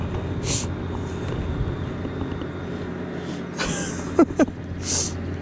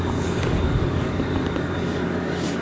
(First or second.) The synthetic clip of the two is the second